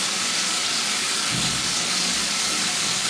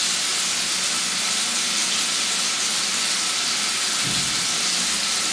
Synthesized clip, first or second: first